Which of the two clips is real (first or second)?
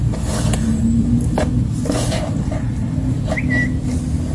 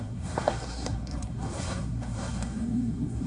first